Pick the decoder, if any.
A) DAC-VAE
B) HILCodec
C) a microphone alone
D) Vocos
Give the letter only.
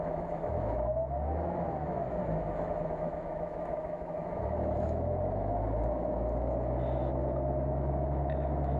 A